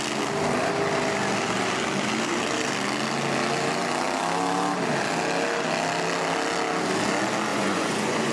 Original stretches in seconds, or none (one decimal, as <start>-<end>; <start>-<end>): 0.0-7.5